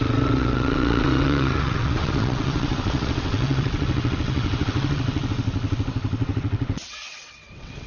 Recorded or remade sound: remade